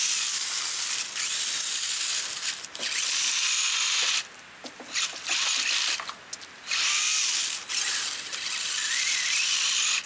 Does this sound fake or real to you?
real